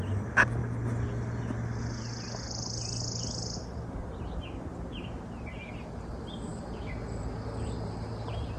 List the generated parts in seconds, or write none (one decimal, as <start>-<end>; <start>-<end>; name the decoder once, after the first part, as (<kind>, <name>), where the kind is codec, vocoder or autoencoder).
none